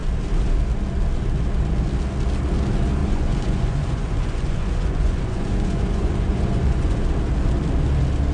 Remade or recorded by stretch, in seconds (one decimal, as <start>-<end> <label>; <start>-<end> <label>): 0.0-3.0 recorded; 3.0-7.0 remade; 7.0-8.3 recorded